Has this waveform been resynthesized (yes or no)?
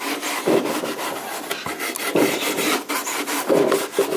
no